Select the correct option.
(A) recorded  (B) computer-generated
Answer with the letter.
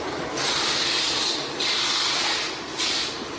A